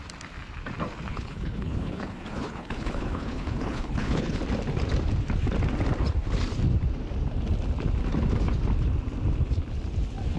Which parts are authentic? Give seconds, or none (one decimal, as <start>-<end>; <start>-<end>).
0.0-1.1; 4.4-10.4